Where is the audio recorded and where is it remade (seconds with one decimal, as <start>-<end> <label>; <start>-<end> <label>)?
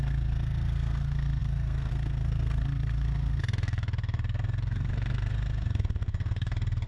0.0-6.9 remade